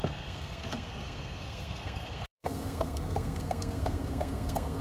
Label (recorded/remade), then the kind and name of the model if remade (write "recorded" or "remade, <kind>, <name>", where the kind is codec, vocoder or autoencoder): remade, codec, SNAC